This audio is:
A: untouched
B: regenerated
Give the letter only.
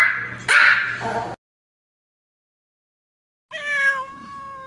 A